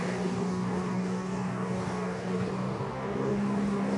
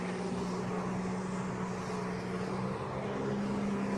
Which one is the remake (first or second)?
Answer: first